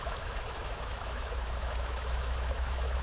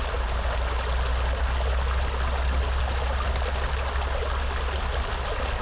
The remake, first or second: first